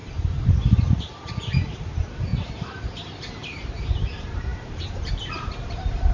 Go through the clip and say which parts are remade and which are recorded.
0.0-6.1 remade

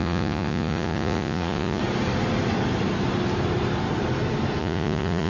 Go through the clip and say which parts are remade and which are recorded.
0.0-1.8 remade; 1.8-4.6 recorded; 4.6-5.3 remade

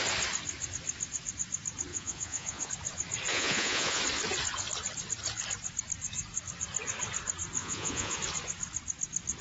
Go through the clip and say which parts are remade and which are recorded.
0.0-1.9 recorded; 1.9-2.7 remade; 2.7-3.3 recorded; 3.3-4.0 remade; 4.0-7.6 recorded; 7.6-8.2 remade; 8.2-9.4 recorded

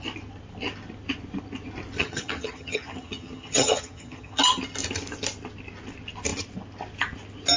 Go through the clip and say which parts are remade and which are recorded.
0.0-2.0 recorded; 2.0-4.4 remade; 4.4-7.6 recorded